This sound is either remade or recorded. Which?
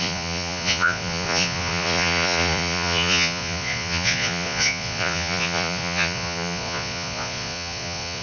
remade